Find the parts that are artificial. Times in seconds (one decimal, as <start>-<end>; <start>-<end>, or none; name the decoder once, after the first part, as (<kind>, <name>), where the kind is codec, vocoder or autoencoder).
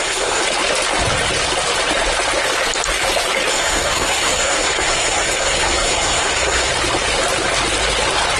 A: 0.0-0.4 (codec, SNAC); 3.5-6.7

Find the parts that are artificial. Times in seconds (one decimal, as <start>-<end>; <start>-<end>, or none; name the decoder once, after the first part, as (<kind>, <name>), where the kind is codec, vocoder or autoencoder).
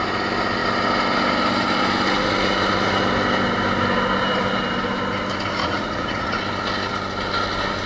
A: 5.6-6.4 (vocoder, Vocos)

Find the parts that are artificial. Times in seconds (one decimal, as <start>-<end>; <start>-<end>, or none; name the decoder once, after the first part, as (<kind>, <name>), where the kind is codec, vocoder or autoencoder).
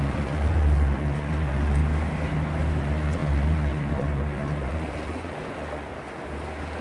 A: 0.0-1.8 (vocoder, Vocos); 2.8-5.9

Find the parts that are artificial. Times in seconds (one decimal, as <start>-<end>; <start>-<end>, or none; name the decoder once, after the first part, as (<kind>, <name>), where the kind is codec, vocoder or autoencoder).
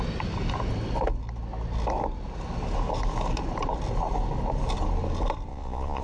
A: 5.5-6.0 (vocoder, Vocos)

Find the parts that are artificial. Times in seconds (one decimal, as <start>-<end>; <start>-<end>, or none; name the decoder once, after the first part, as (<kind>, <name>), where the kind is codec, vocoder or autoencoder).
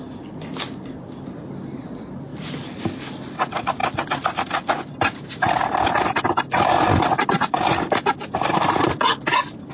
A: none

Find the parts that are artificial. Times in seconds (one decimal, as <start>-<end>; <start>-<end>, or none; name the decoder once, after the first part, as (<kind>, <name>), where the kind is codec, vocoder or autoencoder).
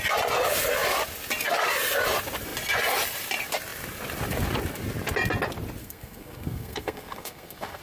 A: 5.8-7.8 (codec, SNAC)